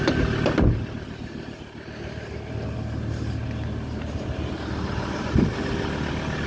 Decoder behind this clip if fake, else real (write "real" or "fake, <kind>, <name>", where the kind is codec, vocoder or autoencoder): real